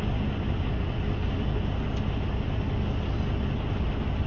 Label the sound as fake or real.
real